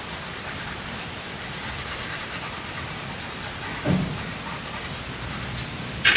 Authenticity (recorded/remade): recorded